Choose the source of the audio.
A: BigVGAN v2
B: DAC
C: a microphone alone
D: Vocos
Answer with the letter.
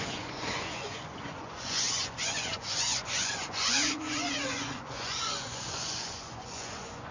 D